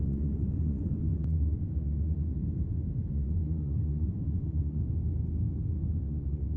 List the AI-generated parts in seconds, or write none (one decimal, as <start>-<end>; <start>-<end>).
0.0-2.4; 3.1-4.8; 6.0-6.6